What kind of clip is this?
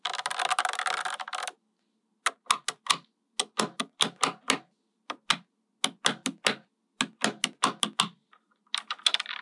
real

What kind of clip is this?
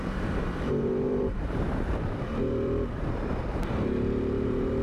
fake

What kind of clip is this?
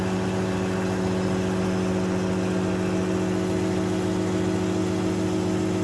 real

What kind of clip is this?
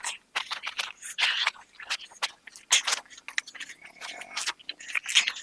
real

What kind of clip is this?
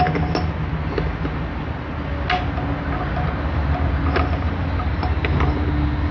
real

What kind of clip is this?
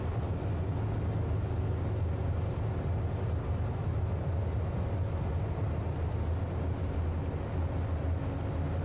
real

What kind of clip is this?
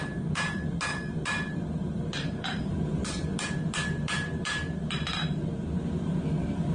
fake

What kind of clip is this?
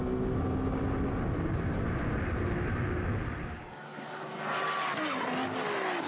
real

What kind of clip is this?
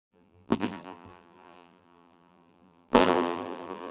fake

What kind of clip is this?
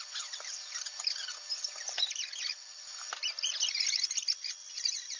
real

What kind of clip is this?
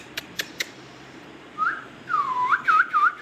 fake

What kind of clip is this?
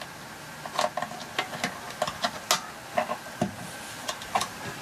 real